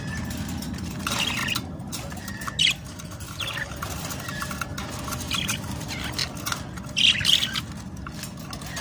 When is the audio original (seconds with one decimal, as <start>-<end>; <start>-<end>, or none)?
0.0-8.8